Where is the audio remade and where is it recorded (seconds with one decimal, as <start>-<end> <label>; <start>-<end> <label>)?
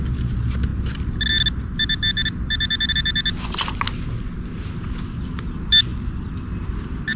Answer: 0.0-7.2 recorded